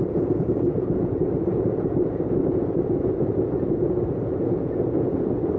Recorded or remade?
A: remade